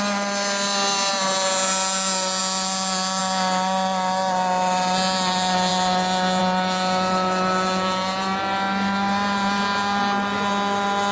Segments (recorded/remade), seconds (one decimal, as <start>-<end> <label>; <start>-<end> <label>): 0.0-11.1 recorded